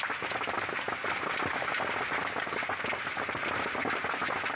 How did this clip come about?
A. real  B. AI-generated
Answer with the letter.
A